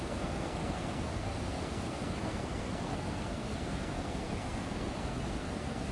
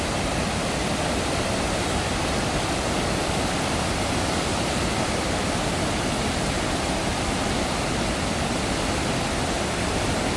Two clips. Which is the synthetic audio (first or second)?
first